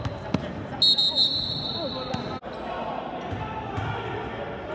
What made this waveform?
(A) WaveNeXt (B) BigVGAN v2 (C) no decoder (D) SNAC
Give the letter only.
C